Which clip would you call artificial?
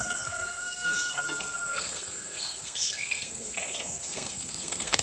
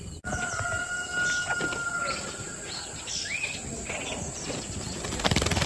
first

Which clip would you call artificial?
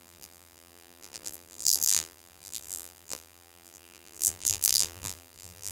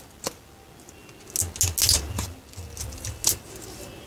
first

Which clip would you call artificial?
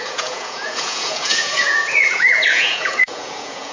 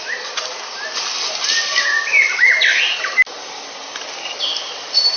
first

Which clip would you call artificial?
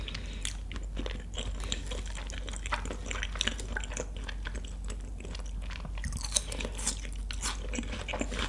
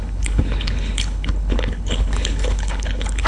second